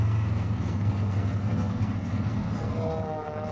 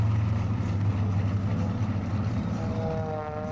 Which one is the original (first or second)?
second